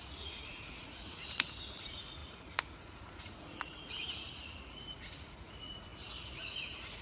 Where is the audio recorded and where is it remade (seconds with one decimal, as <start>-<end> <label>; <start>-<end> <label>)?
0.0-7.0 remade